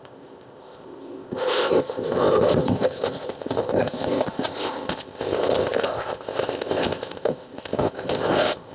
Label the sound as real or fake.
fake